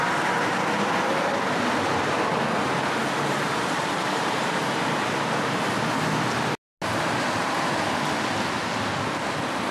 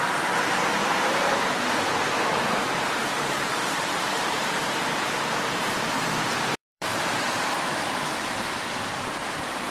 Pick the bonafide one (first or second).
first